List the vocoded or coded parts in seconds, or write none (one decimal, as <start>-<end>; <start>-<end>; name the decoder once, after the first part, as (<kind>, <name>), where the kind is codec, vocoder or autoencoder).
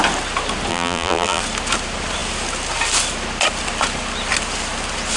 0.7-1.4 (vocoder, BigVGAN v2)